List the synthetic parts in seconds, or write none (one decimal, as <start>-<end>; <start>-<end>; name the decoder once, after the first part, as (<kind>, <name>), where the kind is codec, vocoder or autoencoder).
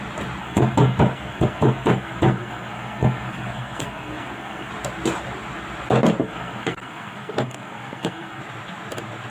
0.4-4.7 (codec, SNAC); 6.2-8.4